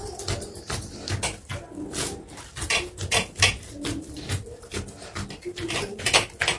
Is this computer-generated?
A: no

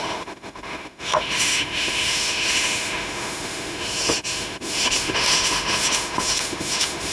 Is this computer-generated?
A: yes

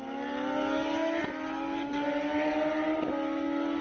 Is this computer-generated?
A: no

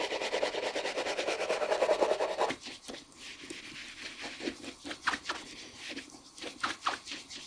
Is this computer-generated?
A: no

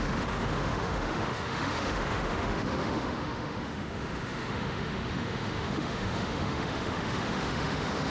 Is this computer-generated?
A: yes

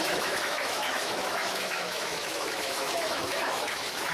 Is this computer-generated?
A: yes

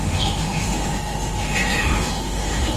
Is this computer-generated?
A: yes